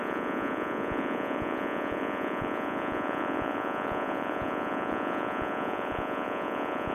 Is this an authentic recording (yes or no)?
no